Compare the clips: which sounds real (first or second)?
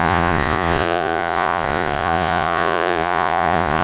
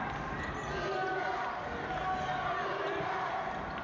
second